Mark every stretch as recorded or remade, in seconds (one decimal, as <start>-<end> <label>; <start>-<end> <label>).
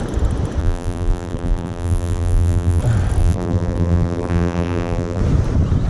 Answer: 0.0-0.6 recorded; 0.6-2.8 remade; 2.8-3.2 recorded; 3.2-5.2 remade; 5.2-5.9 recorded